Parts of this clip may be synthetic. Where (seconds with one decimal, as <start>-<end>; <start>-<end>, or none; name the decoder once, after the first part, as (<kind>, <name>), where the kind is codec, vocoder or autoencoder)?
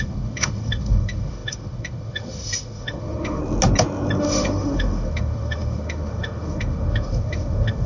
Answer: 0.0-3.4 (autoencoder, DAC-VAE); 4.2-7.9